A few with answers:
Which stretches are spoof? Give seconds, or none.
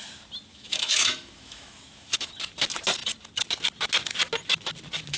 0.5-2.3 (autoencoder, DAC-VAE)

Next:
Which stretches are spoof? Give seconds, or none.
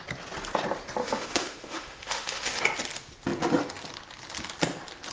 1.0-2.6 (autoencoder, DAC-VAE)